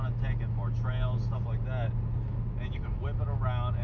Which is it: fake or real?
real